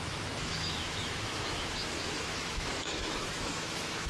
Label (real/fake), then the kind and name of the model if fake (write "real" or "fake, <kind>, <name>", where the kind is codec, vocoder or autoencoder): fake, autoencoder, DAC-VAE